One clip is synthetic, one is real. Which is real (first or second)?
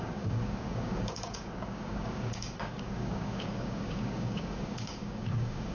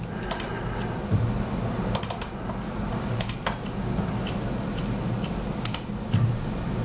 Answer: second